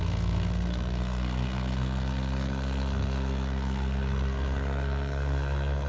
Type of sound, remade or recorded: remade